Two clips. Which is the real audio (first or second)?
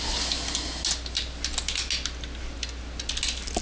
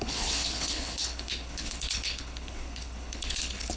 first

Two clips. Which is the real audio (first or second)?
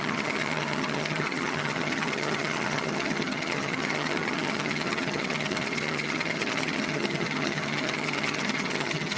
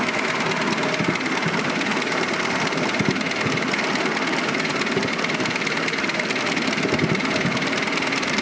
second